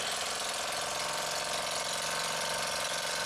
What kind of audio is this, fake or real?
real